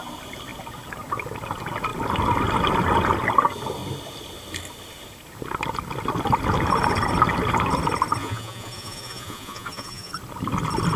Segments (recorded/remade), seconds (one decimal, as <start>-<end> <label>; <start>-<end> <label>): 0.0-8.2 recorded; 8.2-10.1 remade; 10.1-11.0 recorded